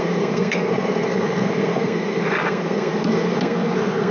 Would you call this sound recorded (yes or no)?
no